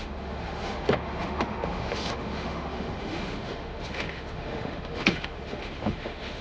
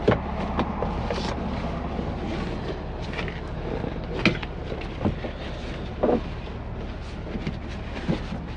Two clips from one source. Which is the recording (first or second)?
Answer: second